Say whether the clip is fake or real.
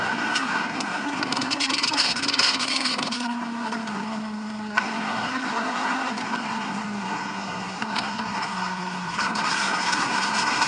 fake